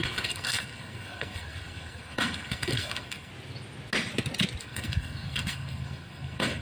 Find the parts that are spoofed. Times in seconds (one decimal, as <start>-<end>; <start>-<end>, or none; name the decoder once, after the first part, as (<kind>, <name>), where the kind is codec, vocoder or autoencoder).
0.0-3.3 (codec, SNAC); 4.6-6.6